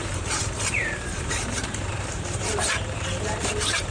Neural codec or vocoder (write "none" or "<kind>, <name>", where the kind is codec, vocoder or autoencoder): vocoder, BigVGAN v2